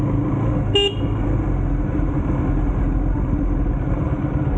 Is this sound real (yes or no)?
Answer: yes